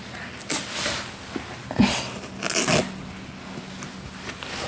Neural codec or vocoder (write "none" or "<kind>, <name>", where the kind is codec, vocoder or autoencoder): none